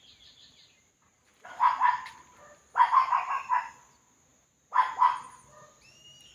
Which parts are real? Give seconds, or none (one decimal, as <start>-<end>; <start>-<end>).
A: 0.0-6.3